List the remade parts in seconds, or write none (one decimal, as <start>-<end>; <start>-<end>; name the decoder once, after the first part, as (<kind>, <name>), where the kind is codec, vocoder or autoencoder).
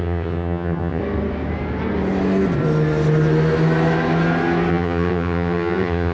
0.0-1.0 (vocoder, HiFi-GAN); 4.7-6.1